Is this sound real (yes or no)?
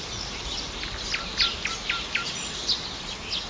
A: yes